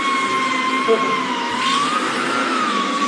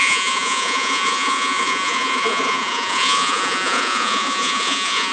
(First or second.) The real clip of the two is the first